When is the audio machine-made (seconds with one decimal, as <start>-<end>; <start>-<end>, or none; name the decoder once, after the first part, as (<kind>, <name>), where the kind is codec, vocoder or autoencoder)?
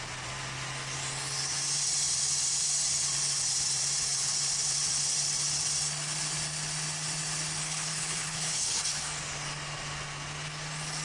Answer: 7.6-8.8 (codec, HILCodec)